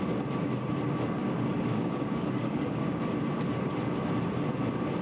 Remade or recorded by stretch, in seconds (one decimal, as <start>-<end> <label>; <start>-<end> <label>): 0.0-1.2 recorded; 1.2-3.0 remade; 3.0-5.0 recorded